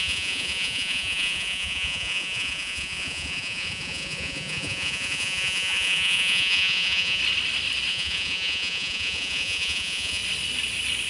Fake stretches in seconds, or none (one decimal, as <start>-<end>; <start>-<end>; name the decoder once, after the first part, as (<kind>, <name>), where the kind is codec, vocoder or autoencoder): 0.0-7.2 (vocoder, Vocos); 7.9-10.2